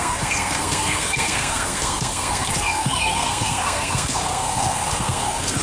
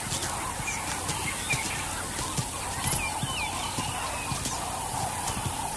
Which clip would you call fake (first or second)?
first